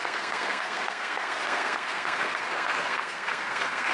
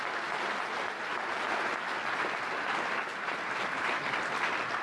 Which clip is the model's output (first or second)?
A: first